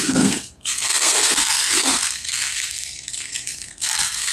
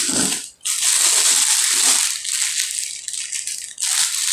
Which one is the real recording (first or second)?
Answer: second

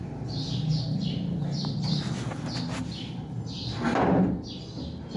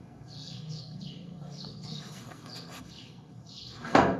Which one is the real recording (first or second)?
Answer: first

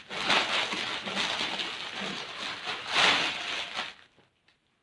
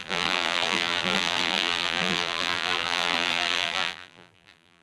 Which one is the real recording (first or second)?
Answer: first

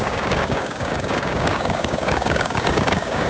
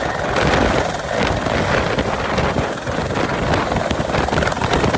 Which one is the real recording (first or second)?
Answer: second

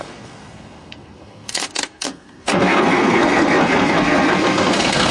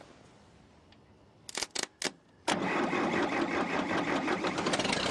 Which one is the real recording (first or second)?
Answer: second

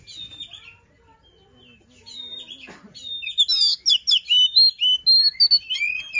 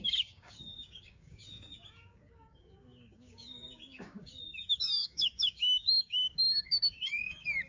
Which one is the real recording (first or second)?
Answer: first